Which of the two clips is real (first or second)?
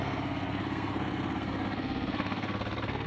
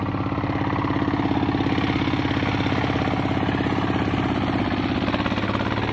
second